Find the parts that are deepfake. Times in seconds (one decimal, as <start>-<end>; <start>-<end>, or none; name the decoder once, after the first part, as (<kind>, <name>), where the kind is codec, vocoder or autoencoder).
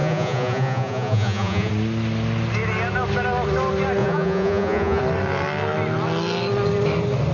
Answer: 0.0-1.7 (vocoder, Vocos); 4.0-5.0